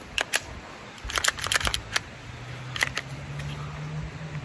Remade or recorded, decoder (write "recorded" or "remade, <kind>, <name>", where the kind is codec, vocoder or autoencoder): recorded